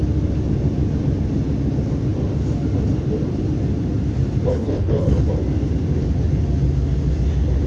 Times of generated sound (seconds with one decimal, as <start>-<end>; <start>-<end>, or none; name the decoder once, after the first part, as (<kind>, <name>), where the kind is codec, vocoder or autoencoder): 4.5-5.2 (codec, HILCodec)